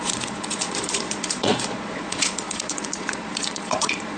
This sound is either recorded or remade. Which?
remade